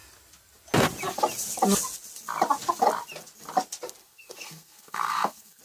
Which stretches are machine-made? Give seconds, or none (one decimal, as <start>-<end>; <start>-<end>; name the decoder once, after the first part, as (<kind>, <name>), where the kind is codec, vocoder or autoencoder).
4.0-5.6 (codec, SNAC)